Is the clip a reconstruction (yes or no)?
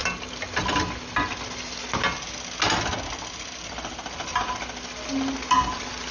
no